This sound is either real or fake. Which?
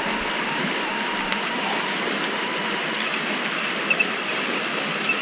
real